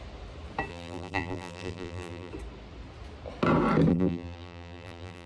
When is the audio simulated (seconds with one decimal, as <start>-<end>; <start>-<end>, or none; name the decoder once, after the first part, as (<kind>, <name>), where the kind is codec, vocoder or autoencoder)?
0.7-2.3 (vocoder, BigVGAN v2); 3.9-5.3